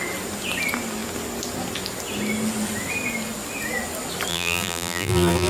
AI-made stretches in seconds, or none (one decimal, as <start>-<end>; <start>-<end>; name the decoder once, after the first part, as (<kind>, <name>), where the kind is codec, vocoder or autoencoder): 4.3-5.5 (vocoder, BigVGAN v2)